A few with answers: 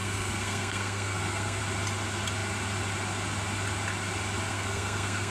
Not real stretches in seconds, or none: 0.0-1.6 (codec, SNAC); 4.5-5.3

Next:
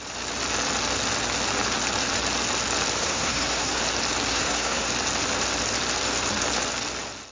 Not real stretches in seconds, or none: 3.0-3.8 (codec, SNAC); 4.3-4.9

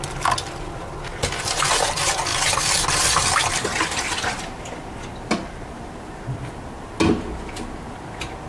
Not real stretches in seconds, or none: none